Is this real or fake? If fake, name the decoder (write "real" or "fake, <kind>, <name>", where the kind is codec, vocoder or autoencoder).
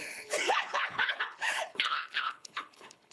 fake, codec, HILCodec